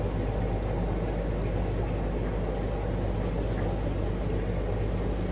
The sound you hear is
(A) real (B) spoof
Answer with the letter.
A